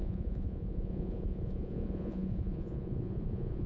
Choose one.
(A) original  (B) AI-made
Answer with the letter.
B